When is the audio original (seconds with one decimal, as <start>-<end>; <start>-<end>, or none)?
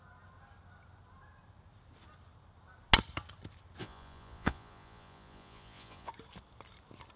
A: 0.0-3.8; 6.1-7.2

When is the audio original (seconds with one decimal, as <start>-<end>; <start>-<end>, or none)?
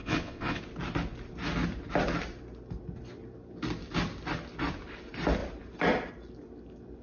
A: 0.6-7.0